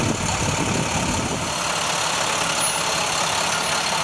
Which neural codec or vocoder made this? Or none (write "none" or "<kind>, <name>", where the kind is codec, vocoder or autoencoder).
none